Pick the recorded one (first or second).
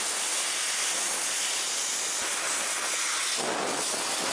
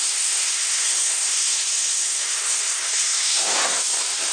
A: first